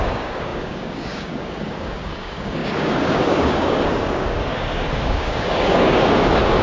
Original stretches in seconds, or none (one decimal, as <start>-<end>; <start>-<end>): none